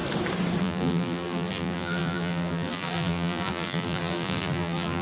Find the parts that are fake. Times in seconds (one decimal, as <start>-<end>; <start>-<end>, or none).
0.6-5.0

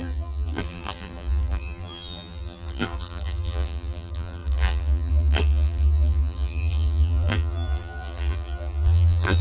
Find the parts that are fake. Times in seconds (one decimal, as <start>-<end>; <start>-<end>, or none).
0.0-9.4

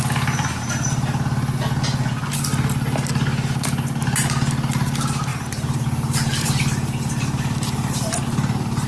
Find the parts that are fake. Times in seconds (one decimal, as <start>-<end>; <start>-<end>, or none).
5.3-8.2